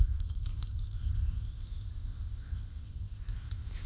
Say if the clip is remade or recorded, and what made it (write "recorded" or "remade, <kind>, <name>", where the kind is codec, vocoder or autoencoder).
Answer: remade, codec, ZipCodec